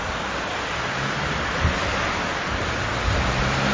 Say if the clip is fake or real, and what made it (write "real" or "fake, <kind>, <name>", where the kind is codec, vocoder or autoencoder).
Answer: real